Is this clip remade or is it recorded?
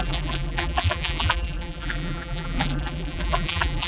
remade